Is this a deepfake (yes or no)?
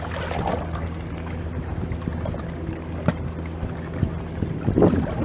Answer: no